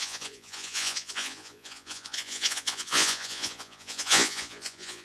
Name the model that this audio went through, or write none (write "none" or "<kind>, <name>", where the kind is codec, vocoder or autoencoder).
vocoder, Vocos